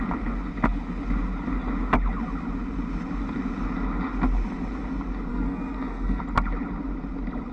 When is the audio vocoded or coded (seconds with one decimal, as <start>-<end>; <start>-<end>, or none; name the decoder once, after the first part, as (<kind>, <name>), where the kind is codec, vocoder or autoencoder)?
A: 5.3-6.2 (codec, SNAC)